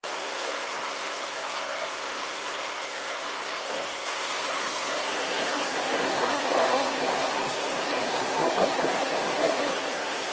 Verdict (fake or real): fake